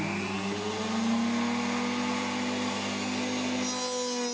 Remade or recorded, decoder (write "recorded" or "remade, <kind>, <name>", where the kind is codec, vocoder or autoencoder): recorded